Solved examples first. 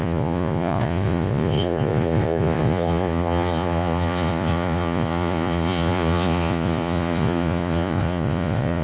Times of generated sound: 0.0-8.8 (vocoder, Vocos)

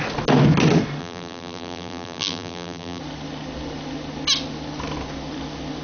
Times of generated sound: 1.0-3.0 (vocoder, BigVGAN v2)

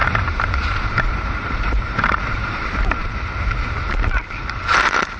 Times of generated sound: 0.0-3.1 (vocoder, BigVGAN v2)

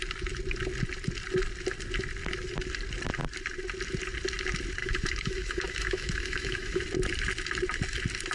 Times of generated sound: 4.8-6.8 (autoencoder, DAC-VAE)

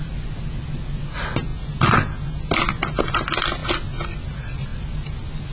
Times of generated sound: none

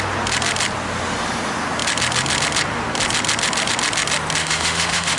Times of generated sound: 4.4-5.2 (autoencoder, DAC-VAE)